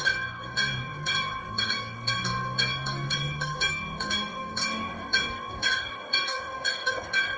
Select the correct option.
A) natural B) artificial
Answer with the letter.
B